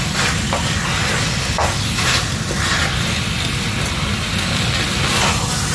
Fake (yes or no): no